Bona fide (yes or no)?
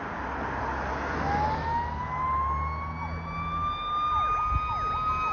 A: yes